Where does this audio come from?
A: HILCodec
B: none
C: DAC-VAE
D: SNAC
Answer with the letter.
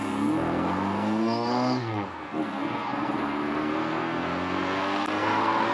D